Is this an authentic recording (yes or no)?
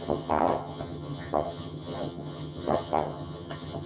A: no